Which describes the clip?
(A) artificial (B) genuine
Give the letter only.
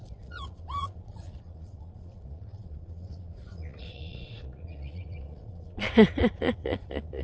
A